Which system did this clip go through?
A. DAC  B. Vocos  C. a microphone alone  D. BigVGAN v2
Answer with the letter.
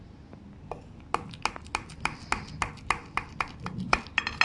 C